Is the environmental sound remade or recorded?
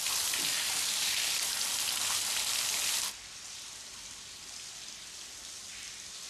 recorded